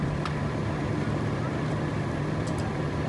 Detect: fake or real fake